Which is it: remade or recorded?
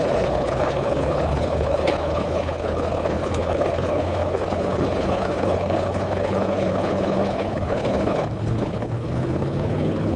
remade